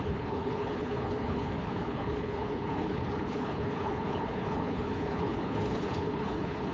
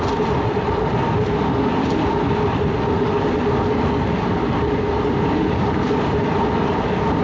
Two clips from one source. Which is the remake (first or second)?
first